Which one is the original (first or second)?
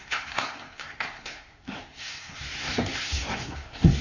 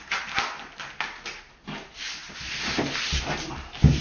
second